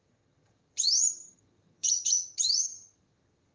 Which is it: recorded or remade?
remade